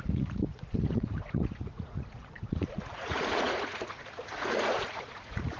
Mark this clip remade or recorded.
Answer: remade